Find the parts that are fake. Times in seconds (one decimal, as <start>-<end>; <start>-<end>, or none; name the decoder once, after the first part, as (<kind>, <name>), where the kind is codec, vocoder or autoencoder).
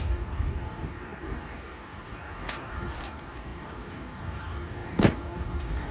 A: 0.0-5.9 (codec, DAC)